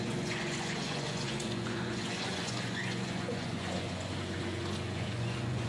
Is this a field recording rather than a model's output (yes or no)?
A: no